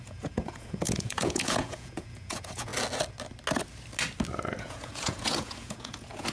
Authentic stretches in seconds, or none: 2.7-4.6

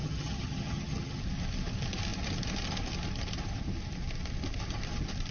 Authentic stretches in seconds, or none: 1.2-5.3

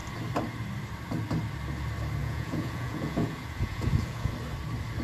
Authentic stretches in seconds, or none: 0.0-2.2; 4.3-5.0

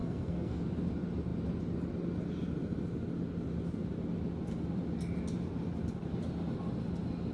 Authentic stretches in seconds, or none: 0.6-7.3

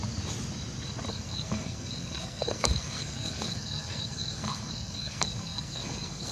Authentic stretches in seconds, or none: 0.0-1.1

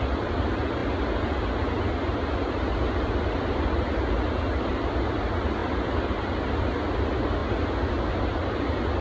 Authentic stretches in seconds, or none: 0.0-9.0

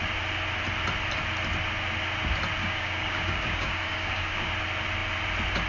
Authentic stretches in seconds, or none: 0.0-2.6; 4.5-5.7

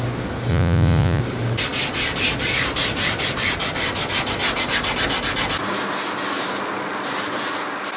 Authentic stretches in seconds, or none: 0.0-0.5; 1.2-8.0